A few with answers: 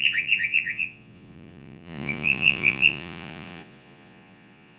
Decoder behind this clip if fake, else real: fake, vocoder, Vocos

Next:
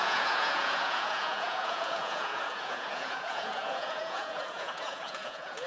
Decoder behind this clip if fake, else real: fake, vocoder, Vocos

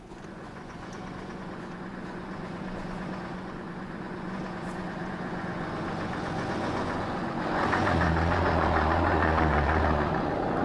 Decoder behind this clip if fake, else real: fake, vocoder, Vocos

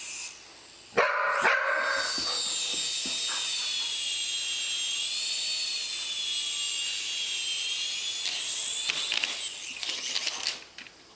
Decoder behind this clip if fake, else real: real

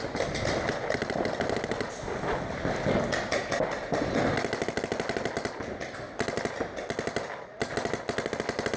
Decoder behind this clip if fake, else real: real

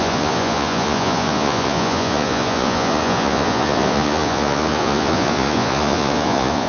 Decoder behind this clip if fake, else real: fake, vocoder, Vocos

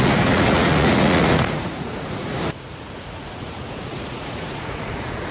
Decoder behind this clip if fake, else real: fake, vocoder, Vocos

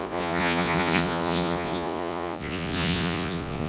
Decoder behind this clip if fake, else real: fake, vocoder, Vocos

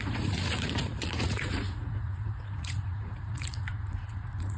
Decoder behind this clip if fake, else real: fake, vocoder, Vocos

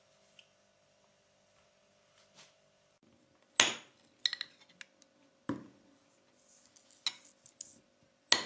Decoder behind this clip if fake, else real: real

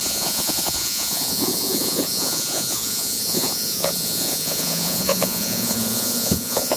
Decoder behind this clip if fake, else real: fake, vocoder, Vocos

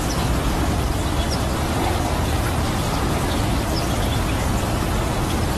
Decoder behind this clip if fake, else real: real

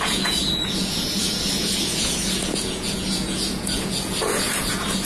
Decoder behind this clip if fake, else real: fake, vocoder, Vocos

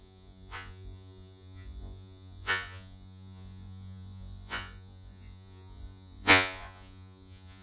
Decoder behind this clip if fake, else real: fake, vocoder, Vocos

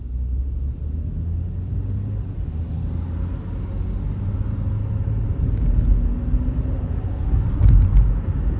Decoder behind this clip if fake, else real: real